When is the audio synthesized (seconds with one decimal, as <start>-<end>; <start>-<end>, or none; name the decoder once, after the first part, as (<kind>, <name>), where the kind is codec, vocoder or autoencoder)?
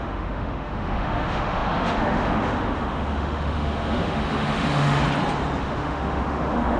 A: 0.0-5.0 (autoencoder, DAC-VAE); 5.6-6.8